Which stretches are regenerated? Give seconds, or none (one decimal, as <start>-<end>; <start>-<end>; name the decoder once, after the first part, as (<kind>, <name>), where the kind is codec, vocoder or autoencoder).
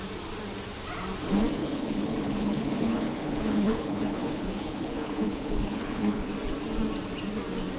1.6-6.3 (codec, HILCodec)